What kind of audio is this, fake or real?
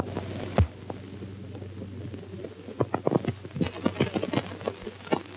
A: real